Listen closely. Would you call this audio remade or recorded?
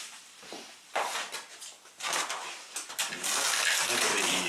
recorded